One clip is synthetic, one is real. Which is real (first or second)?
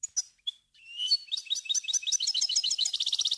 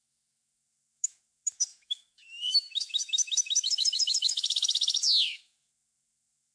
first